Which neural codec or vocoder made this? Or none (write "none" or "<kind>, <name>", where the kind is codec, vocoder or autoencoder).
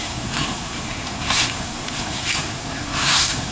codec, SNAC